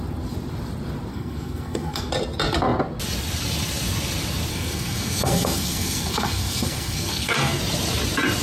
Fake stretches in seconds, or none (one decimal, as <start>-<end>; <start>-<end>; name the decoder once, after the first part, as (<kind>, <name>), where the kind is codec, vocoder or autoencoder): 1.1-2.1 (codec, SNAC); 4.5-7.6